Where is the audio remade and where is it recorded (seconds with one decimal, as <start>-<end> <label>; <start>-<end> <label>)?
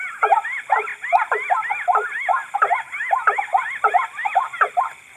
0.0-3.5 recorded; 3.5-4.8 remade; 4.8-5.2 recorded